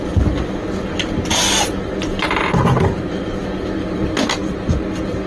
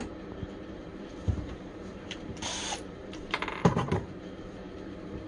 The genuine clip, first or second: first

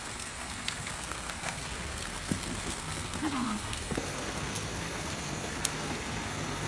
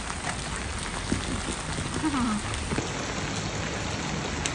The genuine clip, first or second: second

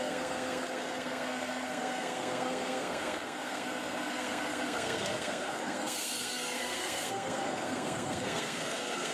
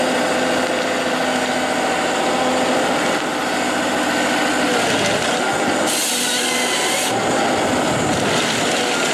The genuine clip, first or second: second